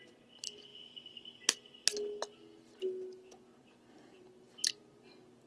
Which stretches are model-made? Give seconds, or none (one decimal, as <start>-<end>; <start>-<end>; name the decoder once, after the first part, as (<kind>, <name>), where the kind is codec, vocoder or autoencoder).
none